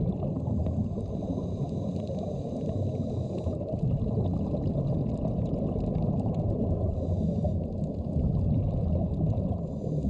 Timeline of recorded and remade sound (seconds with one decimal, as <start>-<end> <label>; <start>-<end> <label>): 0.0-10.1 recorded